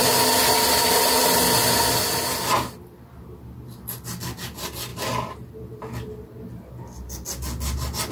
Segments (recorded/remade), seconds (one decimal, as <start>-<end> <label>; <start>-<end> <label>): 0.0-8.1 recorded

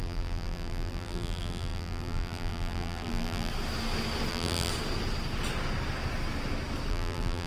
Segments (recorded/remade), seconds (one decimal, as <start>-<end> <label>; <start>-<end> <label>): 0.0-3.5 remade; 3.5-4.3 recorded; 4.3-4.7 remade; 4.7-6.9 recorded; 6.9-7.5 remade